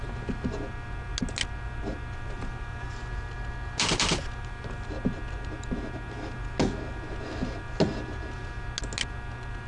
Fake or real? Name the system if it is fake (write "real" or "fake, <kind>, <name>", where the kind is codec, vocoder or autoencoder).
real